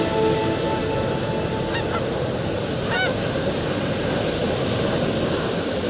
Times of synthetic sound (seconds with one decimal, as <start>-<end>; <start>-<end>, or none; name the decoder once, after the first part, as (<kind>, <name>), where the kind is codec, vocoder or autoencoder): none